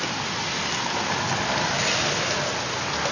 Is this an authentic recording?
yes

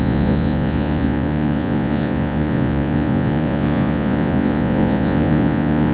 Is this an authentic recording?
no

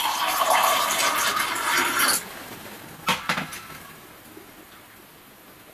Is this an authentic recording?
yes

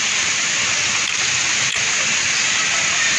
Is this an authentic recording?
yes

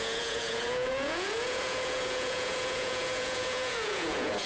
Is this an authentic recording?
no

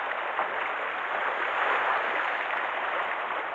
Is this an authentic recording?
yes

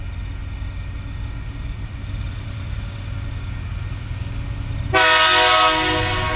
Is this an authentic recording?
yes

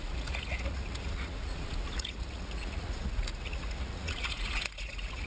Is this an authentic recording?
no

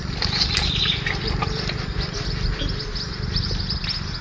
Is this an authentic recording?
yes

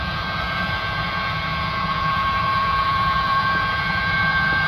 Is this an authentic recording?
no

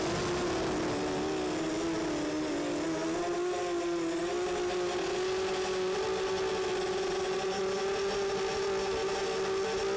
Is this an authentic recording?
yes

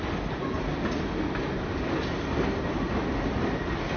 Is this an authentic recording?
yes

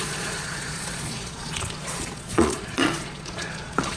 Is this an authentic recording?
no